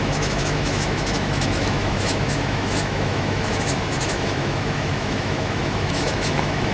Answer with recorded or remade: remade